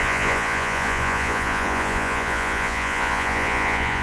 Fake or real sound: fake